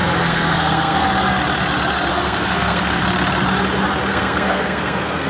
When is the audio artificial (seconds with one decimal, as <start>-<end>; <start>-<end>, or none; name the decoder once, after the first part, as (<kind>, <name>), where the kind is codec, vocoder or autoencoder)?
0.0-1.1 (codec, SNAC); 2.1-3.0; 4.1-5.3